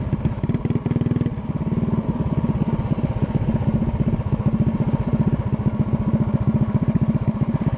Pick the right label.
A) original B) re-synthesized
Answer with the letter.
A